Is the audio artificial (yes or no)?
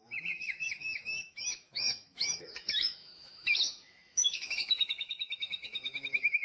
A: yes